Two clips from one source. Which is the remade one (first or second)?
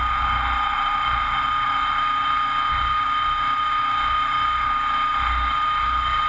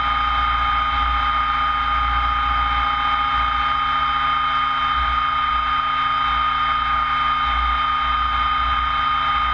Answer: first